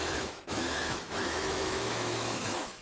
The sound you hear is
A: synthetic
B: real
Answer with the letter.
A